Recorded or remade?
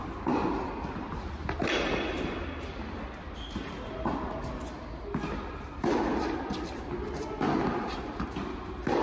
recorded